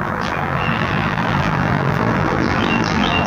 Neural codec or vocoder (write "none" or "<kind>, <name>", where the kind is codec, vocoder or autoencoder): vocoder, BigVGAN v2